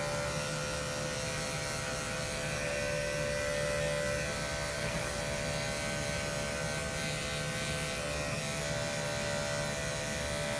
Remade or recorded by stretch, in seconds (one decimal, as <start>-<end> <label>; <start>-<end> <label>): 0.0-4.7 recorded; 4.7-5.2 remade; 5.2-10.6 recorded